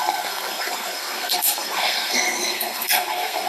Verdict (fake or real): fake